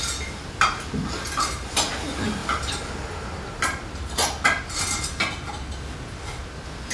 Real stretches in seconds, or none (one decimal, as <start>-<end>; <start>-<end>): 0.0-6.9